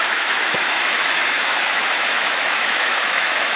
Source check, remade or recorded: remade